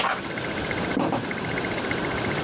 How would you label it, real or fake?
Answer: real